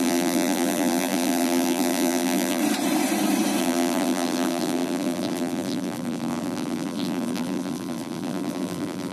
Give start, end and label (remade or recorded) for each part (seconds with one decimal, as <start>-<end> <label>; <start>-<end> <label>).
0.0-2.6 remade; 2.6-3.6 recorded; 3.6-9.1 remade

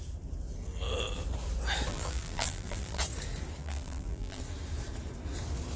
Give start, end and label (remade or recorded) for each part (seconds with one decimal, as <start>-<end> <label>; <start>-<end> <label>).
0.0-1.9 recorded; 1.9-3.0 remade; 3.0-3.6 recorded; 3.6-4.4 remade; 4.4-5.8 recorded

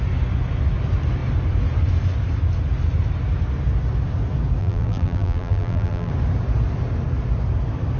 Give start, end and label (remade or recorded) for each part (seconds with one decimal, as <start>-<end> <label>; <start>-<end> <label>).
0.0-4.6 recorded; 4.6-6.1 remade; 6.1-8.0 recorded

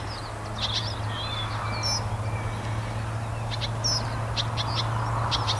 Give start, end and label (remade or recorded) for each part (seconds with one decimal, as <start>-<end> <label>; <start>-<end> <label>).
0.0-5.6 recorded